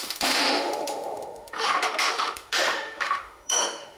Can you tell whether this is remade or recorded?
remade